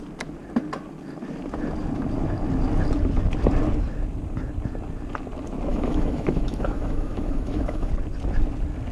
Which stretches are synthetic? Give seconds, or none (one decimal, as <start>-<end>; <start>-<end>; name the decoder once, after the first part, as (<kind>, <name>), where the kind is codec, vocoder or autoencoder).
5.7-7.9 (autoencoder, DAC-VAE)